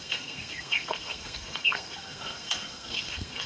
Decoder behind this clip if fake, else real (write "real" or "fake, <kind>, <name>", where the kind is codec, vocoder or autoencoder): fake, codec, SNAC